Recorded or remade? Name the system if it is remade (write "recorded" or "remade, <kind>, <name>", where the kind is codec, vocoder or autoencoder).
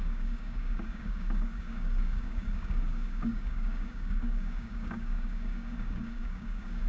remade, codec, DAC